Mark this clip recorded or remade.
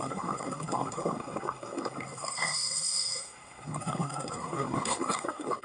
remade